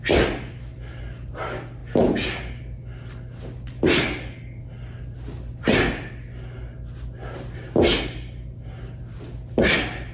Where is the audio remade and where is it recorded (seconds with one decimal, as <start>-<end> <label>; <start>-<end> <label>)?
0.0-10.1 recorded